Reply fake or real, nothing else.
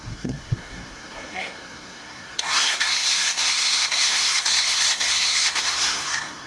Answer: fake